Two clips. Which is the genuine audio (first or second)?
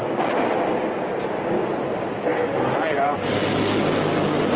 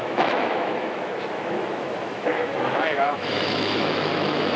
first